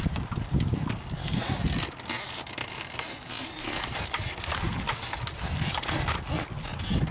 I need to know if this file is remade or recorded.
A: recorded